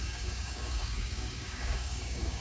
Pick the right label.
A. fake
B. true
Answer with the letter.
A